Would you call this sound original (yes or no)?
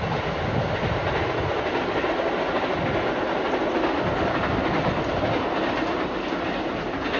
yes